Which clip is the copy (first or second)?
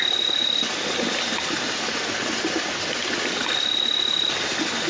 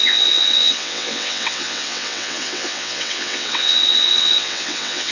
second